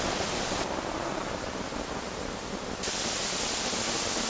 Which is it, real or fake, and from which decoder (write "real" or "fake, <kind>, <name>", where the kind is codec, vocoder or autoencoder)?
real